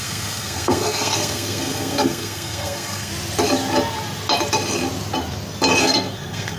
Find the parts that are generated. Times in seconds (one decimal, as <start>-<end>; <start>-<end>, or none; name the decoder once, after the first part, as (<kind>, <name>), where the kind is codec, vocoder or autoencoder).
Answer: 0.0-3.1 (codec, SNAC); 5.8-6.6